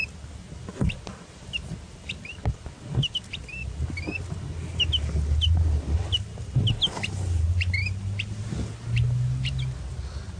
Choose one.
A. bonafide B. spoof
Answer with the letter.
A